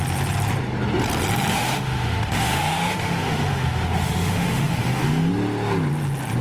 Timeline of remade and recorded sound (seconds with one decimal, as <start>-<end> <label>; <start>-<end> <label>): 0.0-1.5 recorded; 1.5-5.3 remade; 5.3-6.4 recorded